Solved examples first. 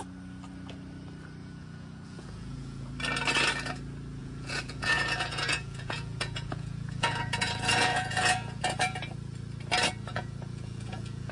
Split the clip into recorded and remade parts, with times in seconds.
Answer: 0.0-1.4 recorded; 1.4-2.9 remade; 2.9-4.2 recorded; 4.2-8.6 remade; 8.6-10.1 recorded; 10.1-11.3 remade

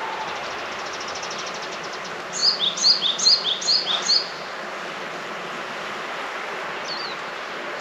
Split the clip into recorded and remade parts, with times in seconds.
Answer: 0.0-7.8 recorded

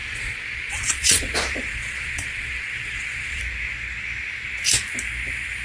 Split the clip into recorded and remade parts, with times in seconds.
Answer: 0.0-3.4 remade; 3.4-5.6 recorded

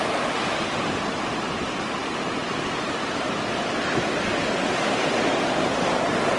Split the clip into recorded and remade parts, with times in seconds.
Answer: 0.0-6.4 recorded

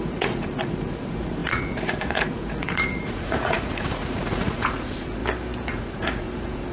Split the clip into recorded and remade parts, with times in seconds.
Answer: 0.0-5.2 remade; 5.2-5.7 recorded; 5.7-6.7 remade